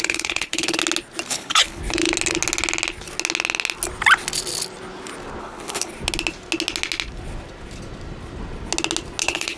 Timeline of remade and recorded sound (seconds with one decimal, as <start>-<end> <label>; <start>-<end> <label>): 0.0-0.8 remade; 0.8-1.3 recorded; 1.3-1.8 remade; 1.8-5.4 recorded; 5.4-5.9 remade; 5.9-9.2 recorded; 9.2-9.6 remade